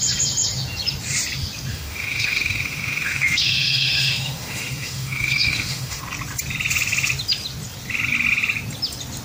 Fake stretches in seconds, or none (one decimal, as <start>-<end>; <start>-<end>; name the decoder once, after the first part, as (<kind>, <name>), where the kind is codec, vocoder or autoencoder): 1.7-6.0 (autoencoder, DAC-VAE)